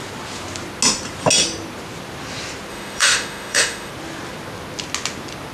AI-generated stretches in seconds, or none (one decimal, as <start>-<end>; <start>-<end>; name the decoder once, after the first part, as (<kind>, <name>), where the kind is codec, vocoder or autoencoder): 2.7-3.9 (autoencoder, DAC-VAE)